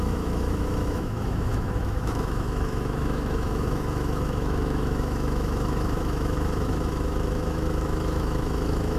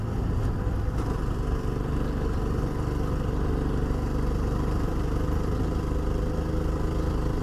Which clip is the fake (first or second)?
first